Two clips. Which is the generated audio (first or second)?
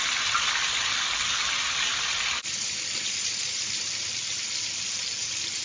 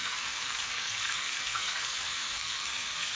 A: second